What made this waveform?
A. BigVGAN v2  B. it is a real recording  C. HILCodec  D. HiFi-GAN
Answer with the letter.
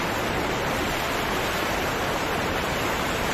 A